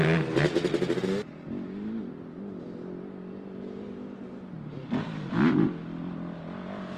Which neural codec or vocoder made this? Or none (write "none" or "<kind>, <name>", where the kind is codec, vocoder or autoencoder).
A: none